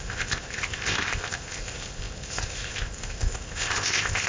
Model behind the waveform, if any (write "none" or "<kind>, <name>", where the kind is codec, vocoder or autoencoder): codec, ZipCodec